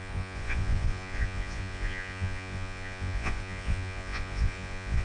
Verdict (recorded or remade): remade